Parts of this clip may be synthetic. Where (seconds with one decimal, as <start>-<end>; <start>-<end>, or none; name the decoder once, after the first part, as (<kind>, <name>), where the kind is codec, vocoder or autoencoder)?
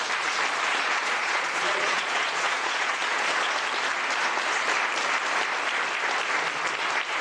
0.7-3.5 (vocoder, Vocos)